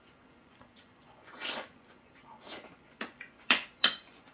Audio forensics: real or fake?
fake